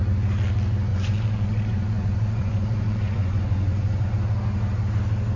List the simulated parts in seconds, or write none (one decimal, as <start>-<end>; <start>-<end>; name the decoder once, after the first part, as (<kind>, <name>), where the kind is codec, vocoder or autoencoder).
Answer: 0.9-4.1 (vocoder, Vocos)